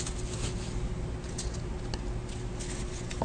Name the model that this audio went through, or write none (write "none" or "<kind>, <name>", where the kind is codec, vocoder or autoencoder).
none